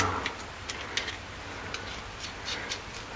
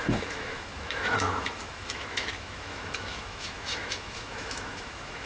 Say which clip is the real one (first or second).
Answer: first